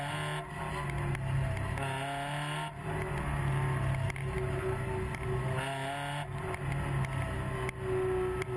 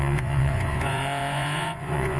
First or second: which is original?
first